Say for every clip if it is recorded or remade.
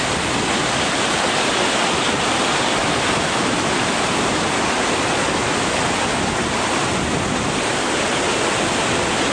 recorded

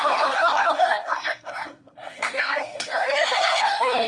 remade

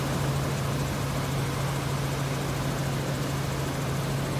recorded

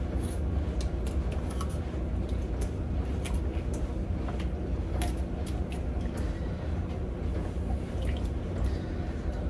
recorded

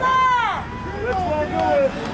recorded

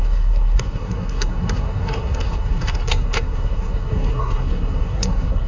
remade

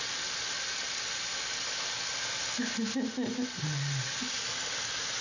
recorded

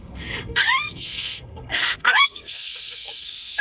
remade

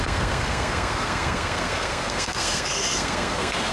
remade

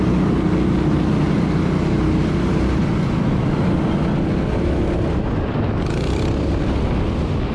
recorded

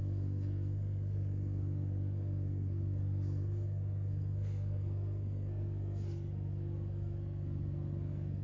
remade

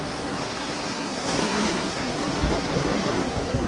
remade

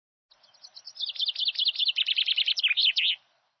recorded